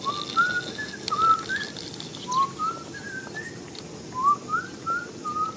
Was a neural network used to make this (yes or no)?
no